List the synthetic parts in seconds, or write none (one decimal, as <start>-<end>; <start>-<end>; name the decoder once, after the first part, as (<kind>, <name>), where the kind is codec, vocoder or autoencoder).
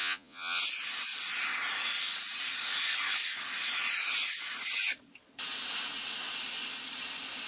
0.0-0.6 (vocoder, Vocos)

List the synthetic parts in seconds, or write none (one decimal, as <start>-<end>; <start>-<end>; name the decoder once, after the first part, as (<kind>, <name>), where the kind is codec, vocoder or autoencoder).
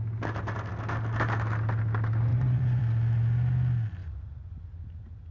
2.3-2.8 (vocoder, Vocos); 4.0-4.6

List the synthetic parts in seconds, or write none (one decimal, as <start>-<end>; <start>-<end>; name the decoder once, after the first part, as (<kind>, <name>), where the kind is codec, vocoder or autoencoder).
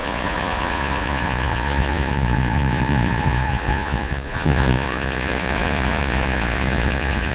0.0-7.3 (vocoder, Vocos)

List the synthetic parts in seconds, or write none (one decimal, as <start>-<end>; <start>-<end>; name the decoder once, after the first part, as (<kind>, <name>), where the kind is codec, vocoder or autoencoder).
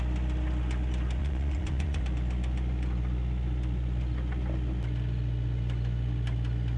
1.2-2.0 (vocoder, Vocos)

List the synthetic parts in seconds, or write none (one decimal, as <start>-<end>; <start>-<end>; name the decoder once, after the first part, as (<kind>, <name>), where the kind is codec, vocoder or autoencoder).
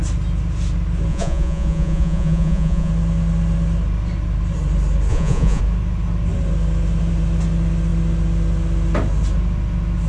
1.1-2.9 (vocoder, Vocos); 5.1-5.6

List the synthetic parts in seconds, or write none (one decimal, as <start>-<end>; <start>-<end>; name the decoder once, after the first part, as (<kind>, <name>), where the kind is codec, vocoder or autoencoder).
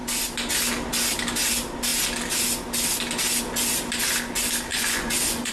4.7-5.5 (vocoder, Vocos)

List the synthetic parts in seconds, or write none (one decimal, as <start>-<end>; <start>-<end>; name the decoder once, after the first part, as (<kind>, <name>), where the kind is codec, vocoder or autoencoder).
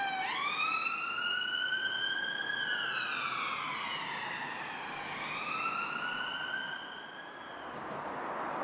none